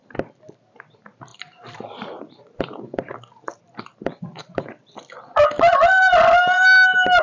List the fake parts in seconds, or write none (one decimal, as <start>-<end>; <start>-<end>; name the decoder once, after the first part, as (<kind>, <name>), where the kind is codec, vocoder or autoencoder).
1.3-4.7 (vocoder, BigVGAN v2)